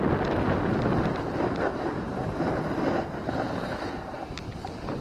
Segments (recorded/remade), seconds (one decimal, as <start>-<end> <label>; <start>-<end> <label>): 0.0-1.7 recorded; 1.7-2.6 remade; 2.6-5.0 recorded